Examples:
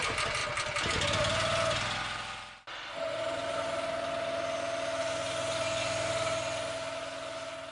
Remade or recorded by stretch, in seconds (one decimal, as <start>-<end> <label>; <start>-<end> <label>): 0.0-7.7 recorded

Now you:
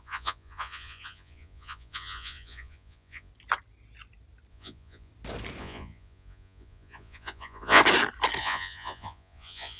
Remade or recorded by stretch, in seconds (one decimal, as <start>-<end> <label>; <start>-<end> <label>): 0.0-3.3 remade; 3.3-4.5 recorded; 4.5-5.1 remade; 5.1-5.6 recorded; 5.6-7.8 remade; 7.8-8.4 recorded; 8.4-9.8 remade

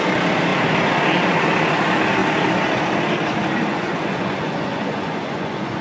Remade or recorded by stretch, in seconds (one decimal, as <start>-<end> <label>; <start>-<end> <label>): 0.0-3.7 recorded; 3.7-5.8 remade

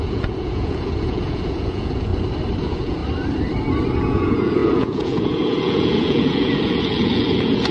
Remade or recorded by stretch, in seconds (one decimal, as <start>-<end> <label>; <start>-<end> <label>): 0.0-2.1 remade; 2.1-2.6 recorded; 2.6-3.0 remade; 3.0-4.0 recorded; 4.0-7.7 remade

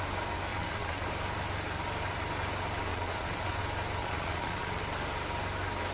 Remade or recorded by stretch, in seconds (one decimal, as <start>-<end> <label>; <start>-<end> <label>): 0.0-0.5 recorded; 0.5-1.1 remade; 1.1-2.9 recorded; 2.9-3.6 remade; 3.6-4.0 recorded; 4.0-4.8 remade; 4.8-5.9 recorded